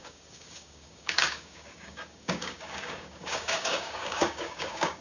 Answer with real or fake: fake